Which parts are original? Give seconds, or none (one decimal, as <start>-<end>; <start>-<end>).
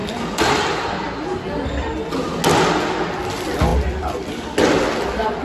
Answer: 0.0-2.7; 3.7-5.4